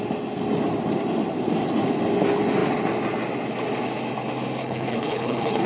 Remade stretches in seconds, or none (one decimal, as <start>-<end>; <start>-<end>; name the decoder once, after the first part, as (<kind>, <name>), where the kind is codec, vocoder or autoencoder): 4.6-5.7 (codec, HILCodec)